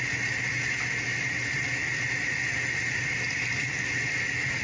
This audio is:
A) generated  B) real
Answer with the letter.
B